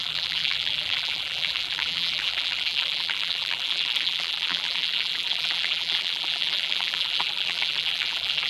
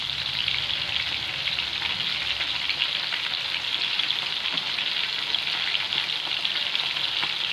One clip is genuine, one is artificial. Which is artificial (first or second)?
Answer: first